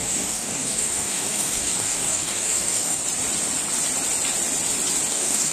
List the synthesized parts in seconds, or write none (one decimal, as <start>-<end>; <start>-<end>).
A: 0.0-3.0; 5.1-5.5